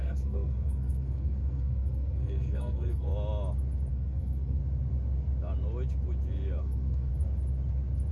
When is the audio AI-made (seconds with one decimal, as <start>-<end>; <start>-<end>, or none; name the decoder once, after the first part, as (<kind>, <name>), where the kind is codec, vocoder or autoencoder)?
0.0-3.1 (codec, SNAC); 3.9-4.6; 6.6-7.1